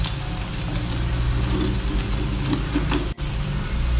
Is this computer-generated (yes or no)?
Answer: no